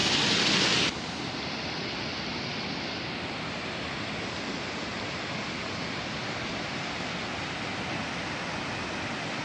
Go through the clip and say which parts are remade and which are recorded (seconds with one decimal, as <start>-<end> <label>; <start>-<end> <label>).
0.0-9.4 recorded